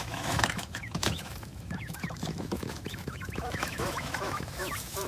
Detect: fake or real fake